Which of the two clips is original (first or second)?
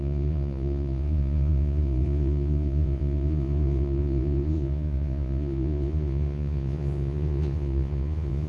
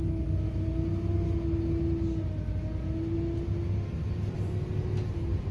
second